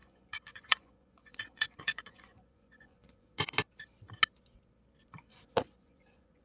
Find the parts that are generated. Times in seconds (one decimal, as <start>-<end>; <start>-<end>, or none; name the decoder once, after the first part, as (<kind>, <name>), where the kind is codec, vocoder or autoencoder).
0.0-3.4 (vocoder, Vocos); 5.3-6.4